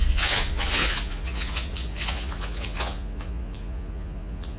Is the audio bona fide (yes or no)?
no